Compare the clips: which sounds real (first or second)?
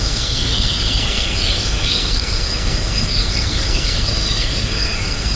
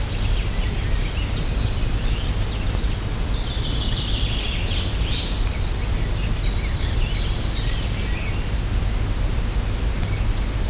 second